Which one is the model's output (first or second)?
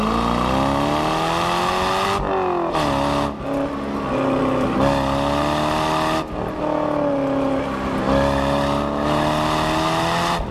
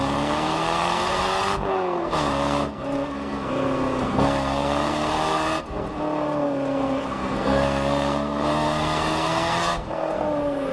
second